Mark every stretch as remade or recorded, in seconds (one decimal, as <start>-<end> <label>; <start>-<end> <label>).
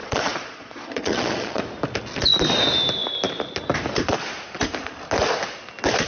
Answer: 0.0-1.6 remade; 1.6-6.1 recorded